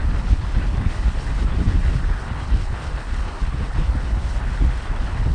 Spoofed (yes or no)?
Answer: yes